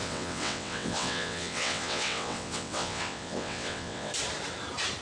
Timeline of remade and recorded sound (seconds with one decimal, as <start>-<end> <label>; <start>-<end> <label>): 0.0-4.1 remade; 4.1-5.0 recorded